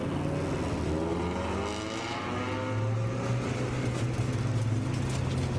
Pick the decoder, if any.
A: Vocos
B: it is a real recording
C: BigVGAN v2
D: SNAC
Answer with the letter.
B